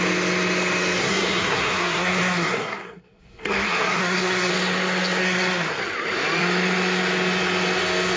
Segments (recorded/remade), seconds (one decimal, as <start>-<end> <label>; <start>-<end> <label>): 0.0-1.0 recorded; 1.0-4.5 remade; 4.5-5.2 recorded; 5.2-5.8 remade; 5.8-8.2 recorded